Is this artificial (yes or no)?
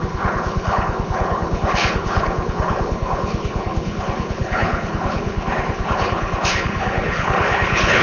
yes